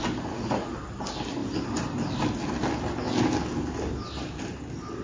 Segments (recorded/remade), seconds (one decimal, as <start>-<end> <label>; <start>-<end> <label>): 0.0-5.0 recorded